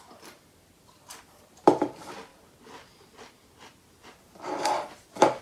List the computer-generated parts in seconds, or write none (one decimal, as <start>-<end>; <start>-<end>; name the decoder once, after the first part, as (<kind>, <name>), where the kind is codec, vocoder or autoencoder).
0.0-2.3 (vocoder, BigVGAN v2)